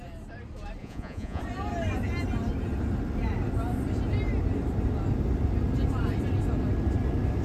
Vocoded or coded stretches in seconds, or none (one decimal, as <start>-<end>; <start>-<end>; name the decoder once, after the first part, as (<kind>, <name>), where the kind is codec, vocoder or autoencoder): 0.8-1.4 (vocoder, Vocos)